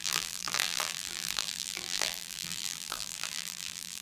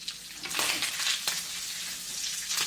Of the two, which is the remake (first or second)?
first